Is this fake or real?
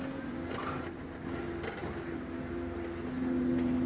real